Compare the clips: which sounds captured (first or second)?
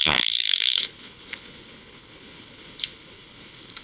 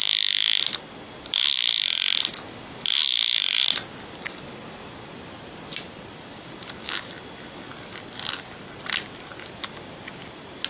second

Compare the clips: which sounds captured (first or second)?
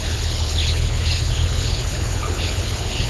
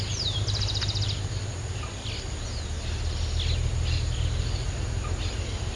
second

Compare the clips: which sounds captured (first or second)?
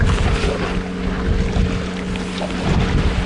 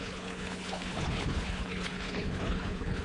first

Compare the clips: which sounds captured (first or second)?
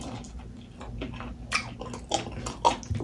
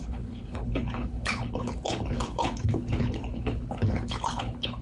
first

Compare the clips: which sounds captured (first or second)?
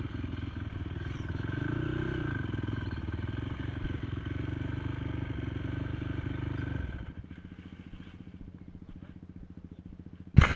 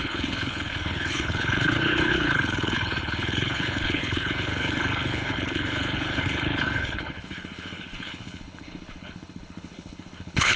first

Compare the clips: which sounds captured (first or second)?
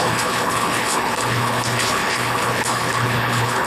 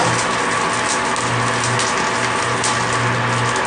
second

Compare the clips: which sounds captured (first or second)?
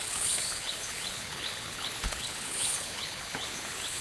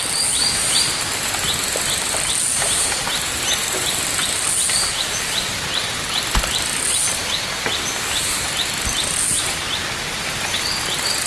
second